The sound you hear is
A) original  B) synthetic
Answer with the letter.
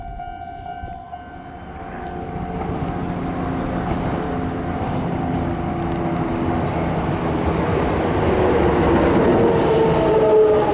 A